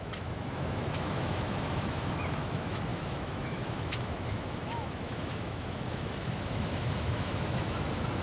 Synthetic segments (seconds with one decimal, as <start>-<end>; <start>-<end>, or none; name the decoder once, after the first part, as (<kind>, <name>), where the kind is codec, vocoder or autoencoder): 0.0-8.2 (autoencoder, DAC-VAE)